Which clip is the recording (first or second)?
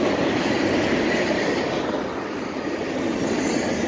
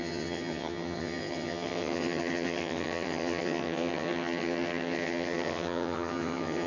first